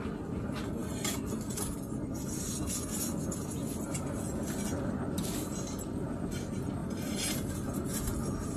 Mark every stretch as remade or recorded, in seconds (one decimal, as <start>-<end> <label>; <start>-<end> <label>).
0.0-6.8 recorded; 6.8-7.5 remade; 7.5-8.6 recorded